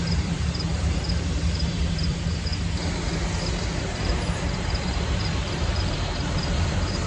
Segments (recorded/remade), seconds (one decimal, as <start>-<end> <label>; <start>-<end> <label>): 0.0-2.5 remade; 2.5-3.5 recorded; 3.5-7.1 remade